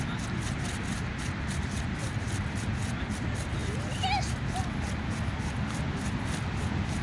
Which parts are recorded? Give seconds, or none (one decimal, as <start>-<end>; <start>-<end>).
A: 0.0-7.0